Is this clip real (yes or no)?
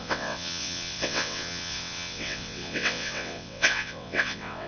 no